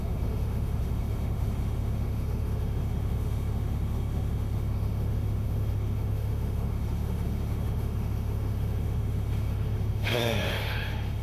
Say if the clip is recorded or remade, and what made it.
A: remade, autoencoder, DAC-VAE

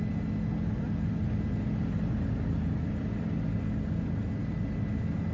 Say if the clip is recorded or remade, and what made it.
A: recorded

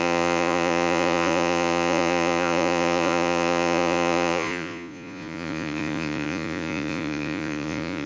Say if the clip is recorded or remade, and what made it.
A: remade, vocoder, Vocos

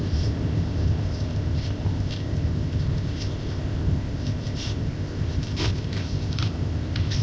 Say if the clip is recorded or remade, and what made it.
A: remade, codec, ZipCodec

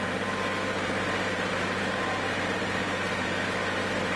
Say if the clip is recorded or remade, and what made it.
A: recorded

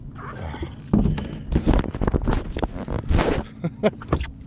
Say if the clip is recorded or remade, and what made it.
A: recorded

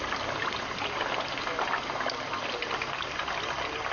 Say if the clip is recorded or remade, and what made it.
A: recorded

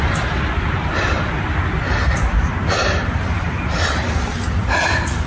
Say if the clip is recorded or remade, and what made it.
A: recorded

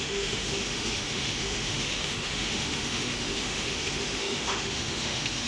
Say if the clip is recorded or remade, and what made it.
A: remade, autoencoder, DAC-VAE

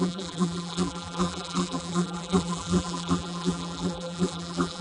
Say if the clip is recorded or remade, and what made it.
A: remade, vocoder, BigVGAN v2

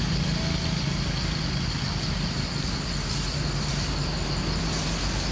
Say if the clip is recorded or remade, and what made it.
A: recorded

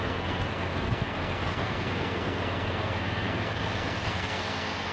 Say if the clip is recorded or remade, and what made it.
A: remade, codec, SNAC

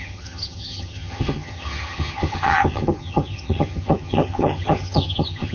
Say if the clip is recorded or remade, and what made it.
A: remade, vocoder, HiFi-GAN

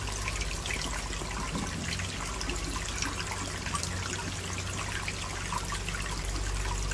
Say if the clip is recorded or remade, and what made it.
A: recorded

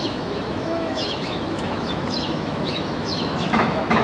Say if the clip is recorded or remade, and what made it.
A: remade, autoencoder, DAC-VAE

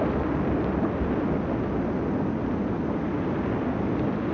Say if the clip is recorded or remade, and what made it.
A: recorded